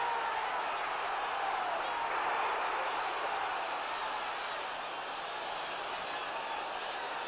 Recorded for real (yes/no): yes